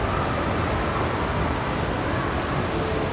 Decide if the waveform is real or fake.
real